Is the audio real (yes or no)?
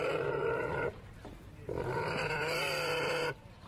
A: no